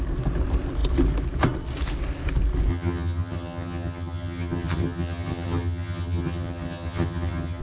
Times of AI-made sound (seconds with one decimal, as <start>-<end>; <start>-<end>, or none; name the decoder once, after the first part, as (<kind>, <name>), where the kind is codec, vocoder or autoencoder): 2.7-7.6 (vocoder, HiFi-GAN)